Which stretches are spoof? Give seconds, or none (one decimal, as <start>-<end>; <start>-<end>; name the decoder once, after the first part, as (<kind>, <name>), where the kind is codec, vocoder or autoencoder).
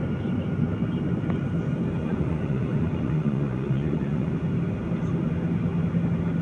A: 2.0-4.3 (vocoder, Vocos)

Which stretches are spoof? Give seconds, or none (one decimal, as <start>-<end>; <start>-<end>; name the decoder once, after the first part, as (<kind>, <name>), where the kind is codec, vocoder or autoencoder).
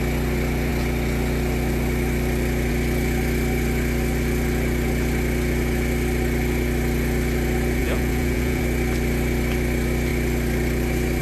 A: 7.8-8.6 (vocoder, Vocos)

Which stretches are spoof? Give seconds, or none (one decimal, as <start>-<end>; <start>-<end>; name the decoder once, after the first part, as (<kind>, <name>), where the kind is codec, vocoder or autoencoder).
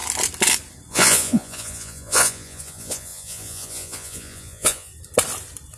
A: 0.9-4.9 (vocoder, Vocos)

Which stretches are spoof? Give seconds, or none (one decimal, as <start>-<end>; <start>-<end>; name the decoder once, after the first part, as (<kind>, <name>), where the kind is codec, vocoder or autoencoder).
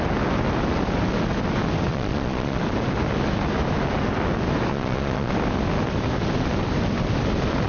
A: 1.9-2.6 (vocoder, Vocos); 4.7-5.3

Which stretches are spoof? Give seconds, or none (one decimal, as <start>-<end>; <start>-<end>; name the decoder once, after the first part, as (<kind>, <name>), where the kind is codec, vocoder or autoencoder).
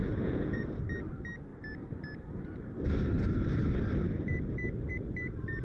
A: 0.0-0.6 (vocoder, Vocos)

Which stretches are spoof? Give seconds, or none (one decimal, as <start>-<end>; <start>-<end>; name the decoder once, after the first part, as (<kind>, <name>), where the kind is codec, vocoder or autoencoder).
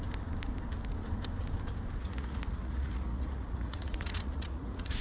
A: 2.0-5.0 (vocoder, Vocos)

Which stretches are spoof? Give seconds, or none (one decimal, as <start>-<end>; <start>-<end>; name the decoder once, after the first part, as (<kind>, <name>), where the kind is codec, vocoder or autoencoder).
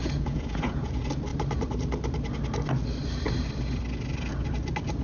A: 0.0-0.8 (vocoder, Vocos)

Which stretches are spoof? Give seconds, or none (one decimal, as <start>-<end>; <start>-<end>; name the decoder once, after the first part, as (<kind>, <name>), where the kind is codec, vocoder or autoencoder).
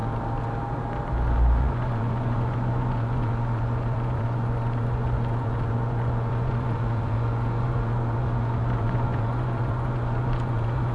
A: 1.6-10.9 (vocoder, Vocos)